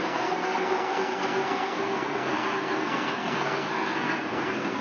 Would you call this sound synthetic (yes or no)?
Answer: yes